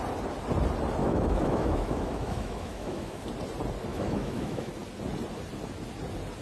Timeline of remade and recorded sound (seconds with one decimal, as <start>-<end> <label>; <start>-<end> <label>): 0.0-1.0 recorded; 1.0-3.2 remade; 3.2-3.9 recorded; 3.9-4.7 remade; 4.7-6.4 recorded